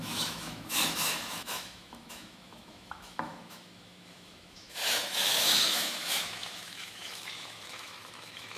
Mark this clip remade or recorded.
remade